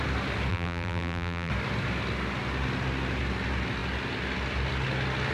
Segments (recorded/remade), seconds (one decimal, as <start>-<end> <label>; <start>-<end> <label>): 0.0-0.5 recorded; 0.5-1.5 remade; 1.5-5.3 recorded

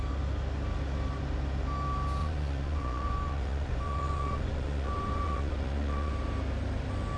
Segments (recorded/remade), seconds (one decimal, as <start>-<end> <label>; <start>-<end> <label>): 0.0-2.2 recorded; 2.2-6.1 remade; 6.1-7.2 recorded

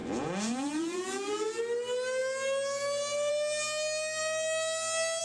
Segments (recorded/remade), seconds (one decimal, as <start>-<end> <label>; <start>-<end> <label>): 0.0-1.6 remade; 1.6-5.2 recorded

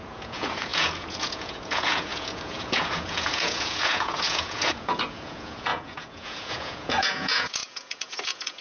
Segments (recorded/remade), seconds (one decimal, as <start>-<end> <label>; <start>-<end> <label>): 0.0-8.6 remade

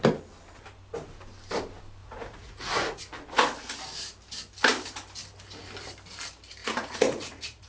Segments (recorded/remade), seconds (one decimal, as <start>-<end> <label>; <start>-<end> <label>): 0.0-2.0 recorded; 2.0-3.0 remade; 3.0-6.6 recorded; 6.6-7.7 remade